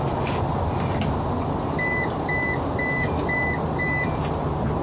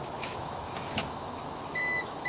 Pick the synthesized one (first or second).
second